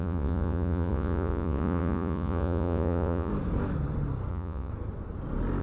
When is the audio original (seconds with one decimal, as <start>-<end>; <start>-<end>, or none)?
3.3-4.3; 4.7-5.6